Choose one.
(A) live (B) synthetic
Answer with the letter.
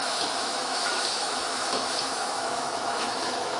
B